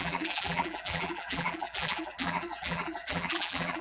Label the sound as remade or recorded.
remade